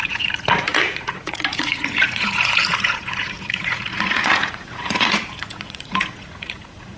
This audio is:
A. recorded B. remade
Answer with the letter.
B